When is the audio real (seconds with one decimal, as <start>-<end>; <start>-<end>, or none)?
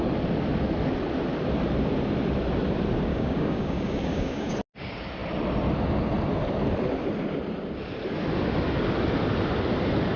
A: 0.0-3.1; 4.5-10.2